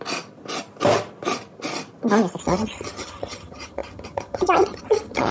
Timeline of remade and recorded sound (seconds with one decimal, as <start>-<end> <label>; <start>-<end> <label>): 0.0-2.4 recorded; 2.4-5.3 remade